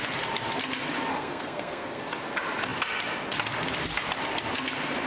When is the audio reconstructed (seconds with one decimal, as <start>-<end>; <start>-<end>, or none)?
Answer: 1.1-2.0